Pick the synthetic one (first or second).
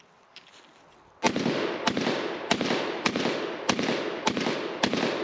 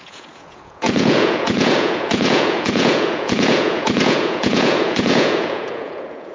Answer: second